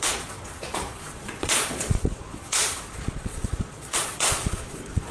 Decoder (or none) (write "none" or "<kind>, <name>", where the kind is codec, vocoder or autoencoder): vocoder, Vocos